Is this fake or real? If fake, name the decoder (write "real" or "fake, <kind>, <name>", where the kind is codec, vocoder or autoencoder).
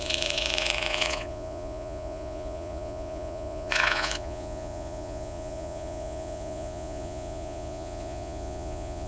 fake, vocoder, Vocos